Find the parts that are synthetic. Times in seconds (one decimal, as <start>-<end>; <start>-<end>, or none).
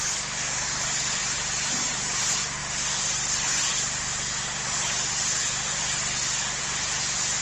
none